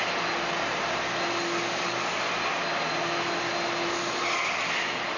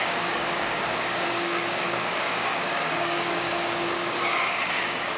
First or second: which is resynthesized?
second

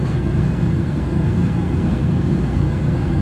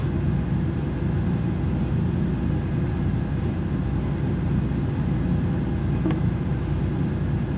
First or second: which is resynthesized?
first